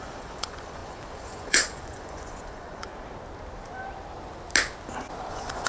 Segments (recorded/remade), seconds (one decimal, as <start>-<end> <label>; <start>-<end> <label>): 0.0-2.9 remade; 2.9-5.3 recorded; 5.3-5.7 remade